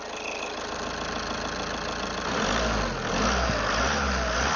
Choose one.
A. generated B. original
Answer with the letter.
B